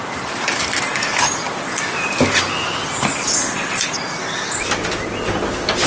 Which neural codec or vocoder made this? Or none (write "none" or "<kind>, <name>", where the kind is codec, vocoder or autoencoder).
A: none